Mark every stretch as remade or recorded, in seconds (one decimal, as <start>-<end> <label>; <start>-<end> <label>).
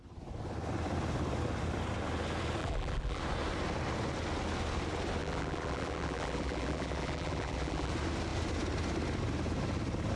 0.0-2.6 recorded; 2.6-3.2 remade; 3.2-5.2 recorded; 5.2-7.9 remade; 7.9-10.2 recorded